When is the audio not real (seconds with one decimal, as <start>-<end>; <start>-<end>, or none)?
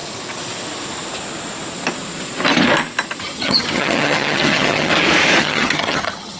3.2-4.9; 5.4-6.4